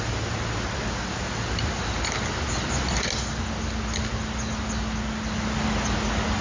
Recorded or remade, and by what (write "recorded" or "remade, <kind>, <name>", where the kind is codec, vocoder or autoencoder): recorded